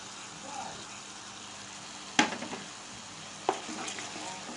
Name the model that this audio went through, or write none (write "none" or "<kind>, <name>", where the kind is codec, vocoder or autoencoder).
none